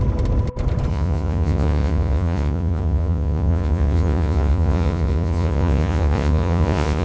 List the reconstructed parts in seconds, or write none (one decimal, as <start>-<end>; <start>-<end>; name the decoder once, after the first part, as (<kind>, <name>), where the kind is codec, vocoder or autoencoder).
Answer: 0.9-7.0 (vocoder, Vocos)